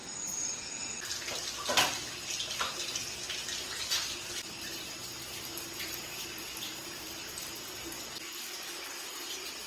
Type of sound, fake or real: real